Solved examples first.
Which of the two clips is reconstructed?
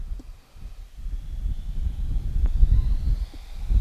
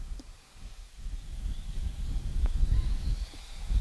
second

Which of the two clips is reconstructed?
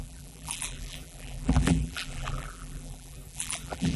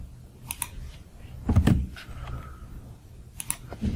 first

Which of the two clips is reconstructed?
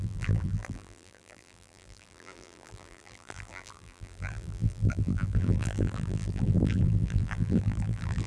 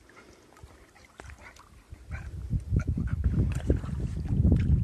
first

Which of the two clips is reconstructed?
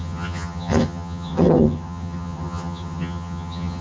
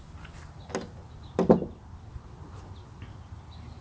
first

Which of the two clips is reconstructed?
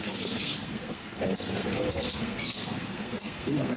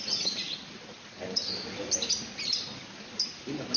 first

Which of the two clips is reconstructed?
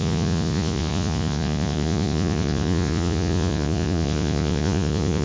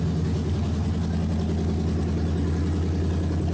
first